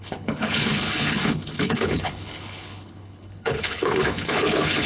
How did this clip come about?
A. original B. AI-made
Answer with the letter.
B